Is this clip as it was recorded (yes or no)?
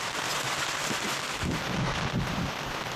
yes